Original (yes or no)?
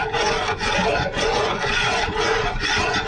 no